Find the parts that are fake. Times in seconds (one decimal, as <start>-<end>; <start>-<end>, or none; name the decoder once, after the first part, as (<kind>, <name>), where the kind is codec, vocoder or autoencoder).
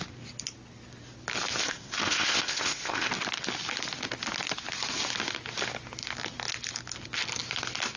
1.6-3.1 (codec, ZipCodec)